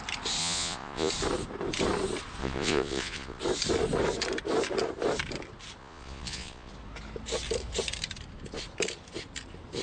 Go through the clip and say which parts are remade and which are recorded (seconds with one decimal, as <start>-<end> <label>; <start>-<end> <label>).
0.0-0.4 recorded; 0.4-1.1 remade; 1.1-2.4 recorded; 2.4-3.4 remade; 3.4-5.8 recorded; 5.8-6.7 remade; 6.7-9.8 recorded